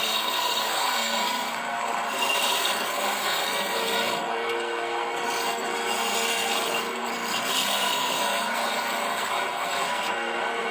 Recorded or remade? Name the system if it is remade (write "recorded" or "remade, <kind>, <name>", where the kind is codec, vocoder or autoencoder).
remade, codec, SNAC